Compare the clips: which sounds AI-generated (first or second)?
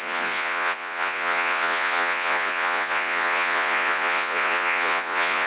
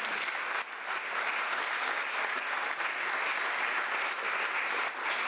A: first